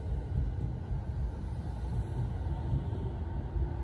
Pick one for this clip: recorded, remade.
recorded